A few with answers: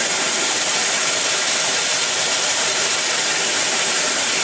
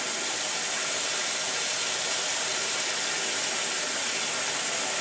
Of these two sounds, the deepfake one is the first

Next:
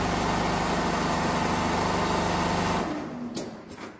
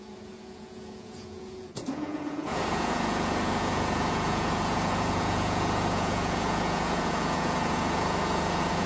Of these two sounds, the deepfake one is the second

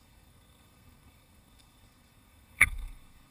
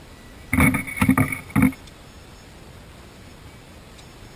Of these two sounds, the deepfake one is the first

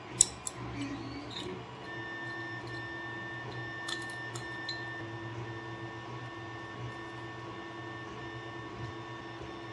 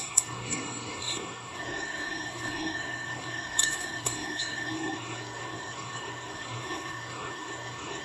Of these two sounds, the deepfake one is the second